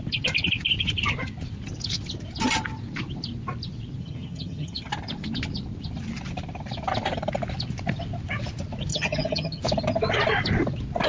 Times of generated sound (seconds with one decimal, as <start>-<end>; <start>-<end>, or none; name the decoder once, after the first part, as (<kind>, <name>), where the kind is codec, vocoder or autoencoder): 4.0-4.9 (vocoder, HiFi-GAN); 8.9-9.6